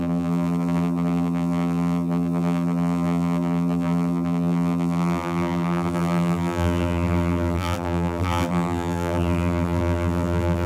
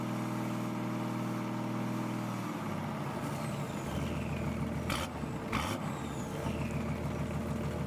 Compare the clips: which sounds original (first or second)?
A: second